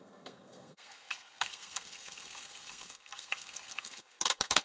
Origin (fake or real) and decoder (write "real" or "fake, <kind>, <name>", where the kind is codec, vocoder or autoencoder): fake, codec, SNAC